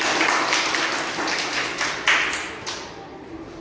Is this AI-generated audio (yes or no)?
no